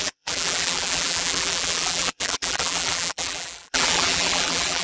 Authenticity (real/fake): fake